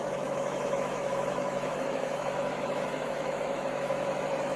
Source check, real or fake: fake